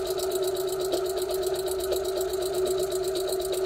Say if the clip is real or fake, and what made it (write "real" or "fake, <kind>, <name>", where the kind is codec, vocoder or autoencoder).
real